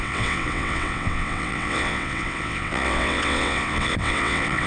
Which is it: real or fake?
fake